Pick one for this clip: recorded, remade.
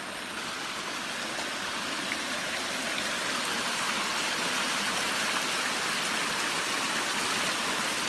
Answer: recorded